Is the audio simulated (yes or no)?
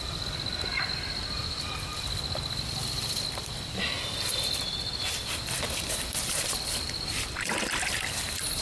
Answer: no